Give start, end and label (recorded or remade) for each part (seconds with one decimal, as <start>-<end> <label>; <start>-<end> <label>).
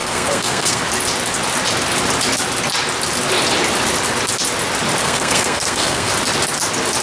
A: 0.0-0.8 remade; 0.8-5.0 recorded; 5.0-6.1 remade; 6.1-7.0 recorded